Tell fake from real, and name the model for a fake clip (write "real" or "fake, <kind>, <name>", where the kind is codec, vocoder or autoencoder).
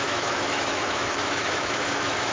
fake, autoencoder, DAC-VAE